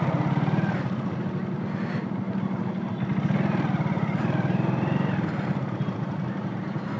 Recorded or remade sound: recorded